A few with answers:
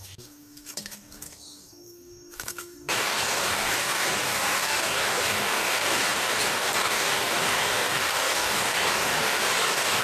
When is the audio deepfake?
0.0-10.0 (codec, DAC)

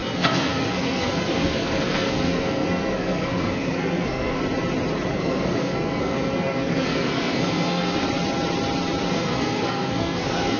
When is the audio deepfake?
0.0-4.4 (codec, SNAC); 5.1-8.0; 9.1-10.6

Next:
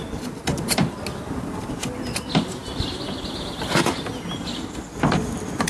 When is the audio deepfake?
none

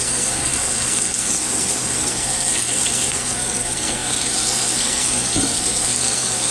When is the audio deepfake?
0.0-6.5 (codec, SNAC)

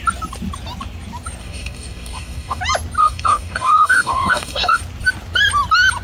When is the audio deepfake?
1.4-2.6 (codec, DAC); 3.0-4.8

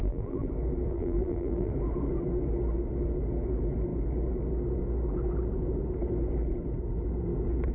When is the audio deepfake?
0.0-0.5 (vocoder, BigVGAN v2); 0.9-1.7

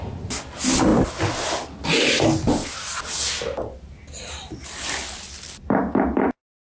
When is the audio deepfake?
none